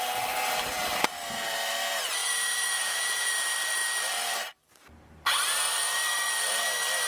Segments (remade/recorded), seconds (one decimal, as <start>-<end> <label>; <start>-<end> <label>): 0.0-2.2 recorded; 2.2-3.3 remade; 3.3-7.1 recorded